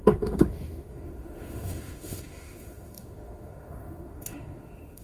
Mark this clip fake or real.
fake